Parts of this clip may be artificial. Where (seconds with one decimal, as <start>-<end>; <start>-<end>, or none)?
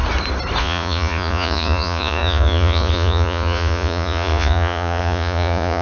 0.6-5.8